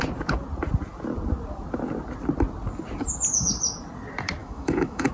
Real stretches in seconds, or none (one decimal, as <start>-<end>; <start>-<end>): 0.0-4.4